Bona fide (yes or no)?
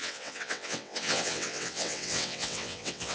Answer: no